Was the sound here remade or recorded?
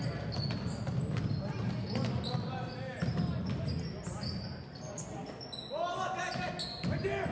recorded